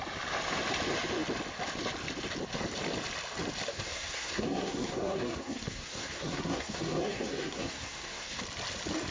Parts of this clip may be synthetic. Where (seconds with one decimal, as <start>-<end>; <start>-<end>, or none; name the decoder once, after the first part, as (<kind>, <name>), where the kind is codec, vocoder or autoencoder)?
3.7-8.4 (codec, SNAC)